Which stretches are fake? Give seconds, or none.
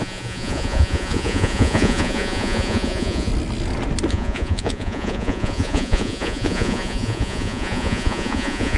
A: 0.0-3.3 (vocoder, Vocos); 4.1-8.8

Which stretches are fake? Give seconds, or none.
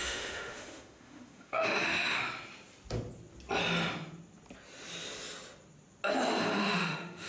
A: 0.0-2.2 (autoencoder, DAC-VAE); 6.6-7.3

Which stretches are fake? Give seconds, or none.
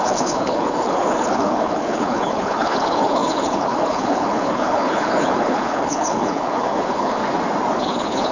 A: 0.0-7.2 (codec, HILCodec); 7.8-8.3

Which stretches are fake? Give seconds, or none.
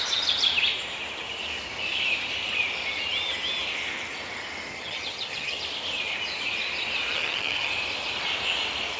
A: 4.7-5.6 (vocoder, HiFi-GAN); 7.1-7.7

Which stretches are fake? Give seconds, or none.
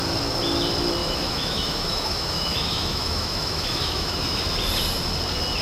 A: 1.0-4.4 (autoencoder, DAC-VAE)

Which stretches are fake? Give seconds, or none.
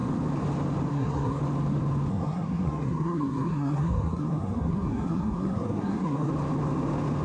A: 0.9-1.4 (codec, SNAC); 2.1-6.3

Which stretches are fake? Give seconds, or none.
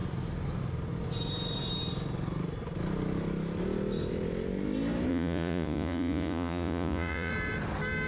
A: 5.1-7.3 (vocoder, Vocos)